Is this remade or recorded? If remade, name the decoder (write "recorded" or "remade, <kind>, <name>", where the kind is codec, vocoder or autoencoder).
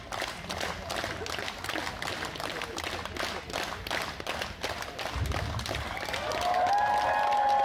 recorded